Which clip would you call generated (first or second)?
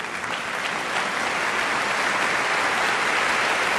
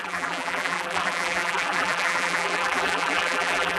second